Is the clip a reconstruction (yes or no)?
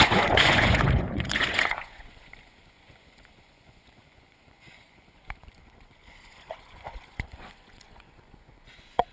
yes